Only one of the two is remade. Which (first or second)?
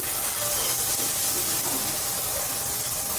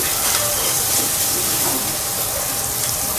second